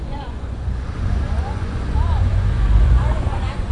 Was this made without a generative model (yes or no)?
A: no